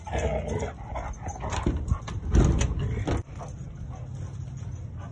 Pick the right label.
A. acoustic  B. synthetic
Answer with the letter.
A